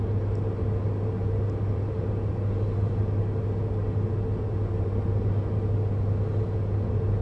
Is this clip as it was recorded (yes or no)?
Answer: yes